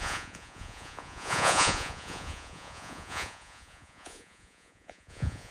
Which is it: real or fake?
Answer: fake